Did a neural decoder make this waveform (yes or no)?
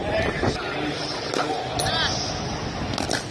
no